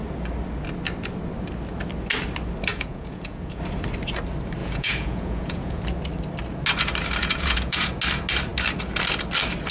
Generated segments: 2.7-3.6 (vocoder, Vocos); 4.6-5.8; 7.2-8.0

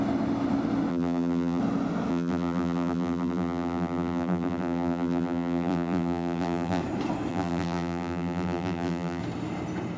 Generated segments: 0.9-1.6 (vocoder, BigVGAN v2); 2.1-6.8; 7.3-9.2

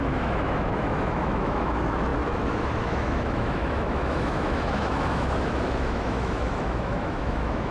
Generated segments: 0.0-7.7 (autoencoder, DAC-VAE)

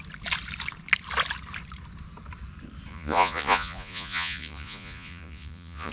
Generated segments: 2.9-5.9 (vocoder, Vocos)

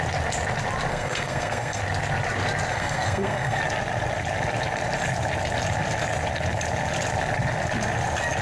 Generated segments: 0.9-1.8 (codec, SNAC); 2.7-3.6

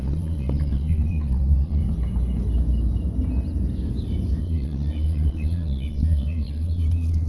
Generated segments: 0.0-1.8 (vocoder, Vocos); 4.4-7.3

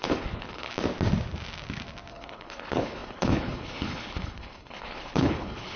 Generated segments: 0.0-0.7 (codec, HILCodec); 2.1-5.8

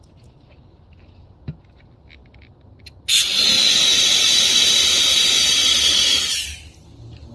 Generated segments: none